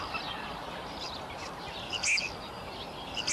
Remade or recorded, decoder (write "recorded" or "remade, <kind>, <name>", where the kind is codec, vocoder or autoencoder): recorded